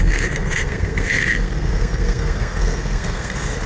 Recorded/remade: remade